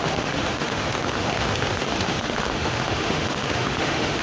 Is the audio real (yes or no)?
no